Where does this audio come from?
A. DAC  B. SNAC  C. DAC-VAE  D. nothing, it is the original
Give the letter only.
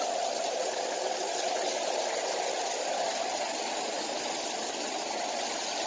D